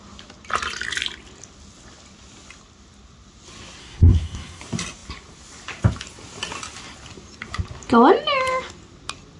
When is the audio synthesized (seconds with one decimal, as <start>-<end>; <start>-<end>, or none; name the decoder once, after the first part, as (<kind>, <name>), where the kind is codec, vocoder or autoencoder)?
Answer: 3.8-4.6 (codec, SNAC)